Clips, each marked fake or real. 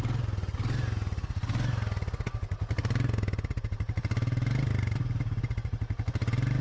real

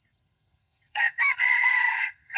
fake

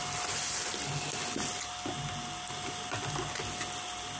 real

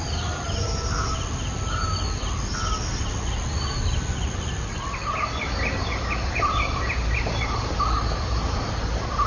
real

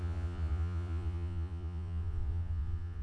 fake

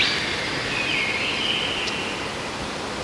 real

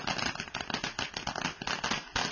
real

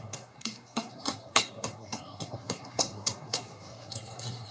fake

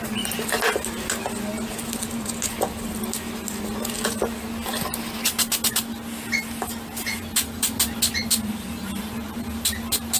real